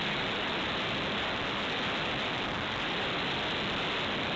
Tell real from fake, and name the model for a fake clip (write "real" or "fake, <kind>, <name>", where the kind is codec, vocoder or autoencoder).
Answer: real